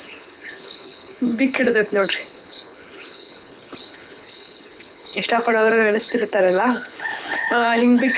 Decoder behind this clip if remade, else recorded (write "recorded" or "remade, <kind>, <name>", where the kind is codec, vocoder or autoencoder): remade, codec, HILCodec